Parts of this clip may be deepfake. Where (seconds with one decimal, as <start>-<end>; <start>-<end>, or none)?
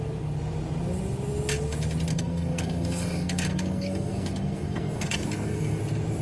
2.1-5.8